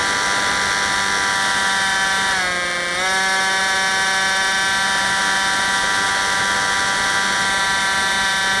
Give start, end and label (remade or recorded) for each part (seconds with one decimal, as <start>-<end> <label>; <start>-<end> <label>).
0.0-8.6 recorded